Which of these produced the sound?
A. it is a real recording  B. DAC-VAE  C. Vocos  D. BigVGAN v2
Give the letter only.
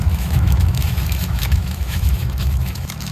B